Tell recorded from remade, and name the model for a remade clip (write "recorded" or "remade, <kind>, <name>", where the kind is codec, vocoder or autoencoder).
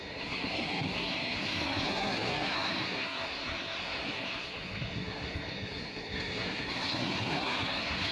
remade, codec, SNAC